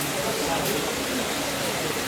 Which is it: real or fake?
fake